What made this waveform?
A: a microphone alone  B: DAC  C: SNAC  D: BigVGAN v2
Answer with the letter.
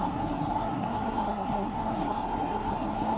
C